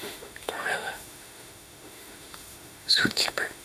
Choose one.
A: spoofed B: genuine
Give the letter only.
A